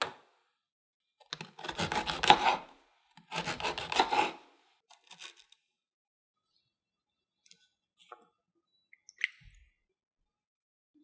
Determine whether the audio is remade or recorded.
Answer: recorded